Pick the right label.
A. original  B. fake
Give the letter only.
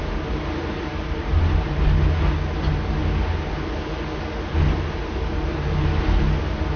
A